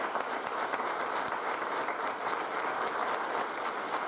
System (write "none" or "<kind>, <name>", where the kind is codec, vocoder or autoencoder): none